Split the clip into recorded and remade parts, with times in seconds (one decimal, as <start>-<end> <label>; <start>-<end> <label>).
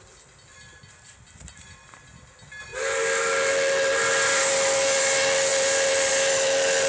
0.0-6.9 recorded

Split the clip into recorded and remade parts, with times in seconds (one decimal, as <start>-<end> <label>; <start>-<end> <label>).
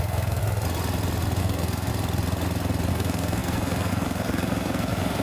0.0-0.4 remade; 0.4-1.4 recorded; 1.4-1.9 remade; 1.9-2.9 recorded; 2.9-5.2 remade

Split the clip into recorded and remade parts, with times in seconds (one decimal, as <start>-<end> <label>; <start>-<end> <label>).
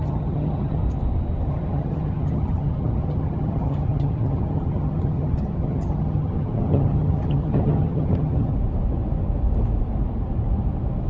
0.0-0.8 remade; 0.8-1.5 recorded; 1.5-8.5 remade; 8.5-11.1 recorded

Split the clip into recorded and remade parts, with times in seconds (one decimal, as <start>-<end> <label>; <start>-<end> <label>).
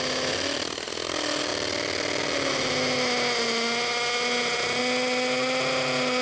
0.0-6.2 recorded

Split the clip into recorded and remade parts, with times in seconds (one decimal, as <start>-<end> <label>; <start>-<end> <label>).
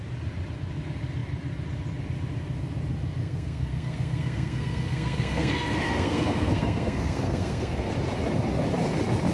0.0-3.2 recorded; 3.2-7.9 remade; 7.9-9.3 recorded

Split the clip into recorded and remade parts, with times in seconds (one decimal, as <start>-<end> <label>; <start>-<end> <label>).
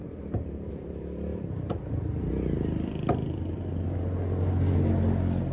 0.0-0.7 remade; 0.7-1.3 recorded; 1.3-2.3 remade; 2.3-5.5 recorded